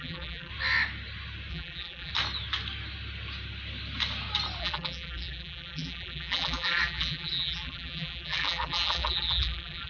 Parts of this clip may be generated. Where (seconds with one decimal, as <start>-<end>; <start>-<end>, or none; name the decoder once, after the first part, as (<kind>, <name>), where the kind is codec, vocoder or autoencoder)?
0.0-0.5 (vocoder, BigVGAN v2); 1.5-2.1; 4.6-9.9